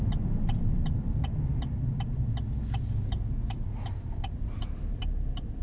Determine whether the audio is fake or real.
real